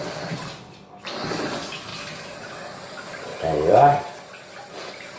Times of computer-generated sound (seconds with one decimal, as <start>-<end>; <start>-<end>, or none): 3.3-4.1